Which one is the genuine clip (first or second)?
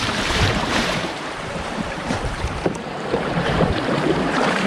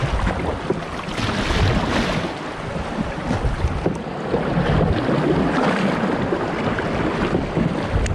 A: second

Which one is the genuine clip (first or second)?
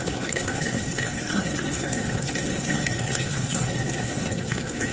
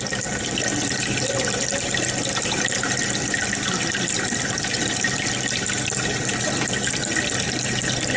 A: second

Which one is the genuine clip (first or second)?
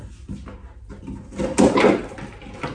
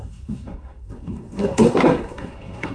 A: first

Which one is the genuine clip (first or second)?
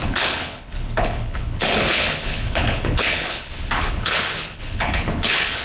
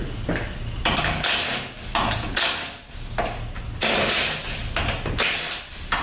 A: second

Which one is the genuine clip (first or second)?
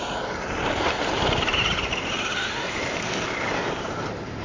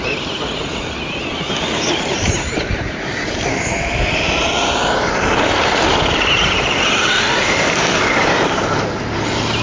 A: second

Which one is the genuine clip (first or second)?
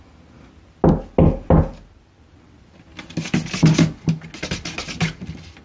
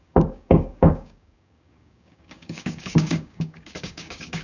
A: first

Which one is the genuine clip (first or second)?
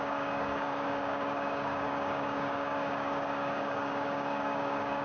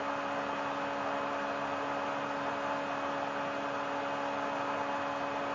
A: second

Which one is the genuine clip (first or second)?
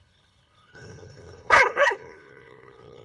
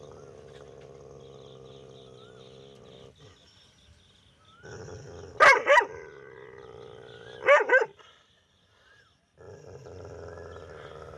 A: second